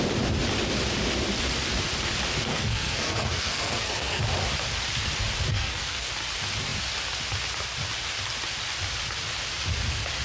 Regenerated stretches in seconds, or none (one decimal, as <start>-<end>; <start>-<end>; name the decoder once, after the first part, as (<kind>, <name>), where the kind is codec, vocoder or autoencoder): 2.5-4.2 (codec, SNAC); 5.5-6.1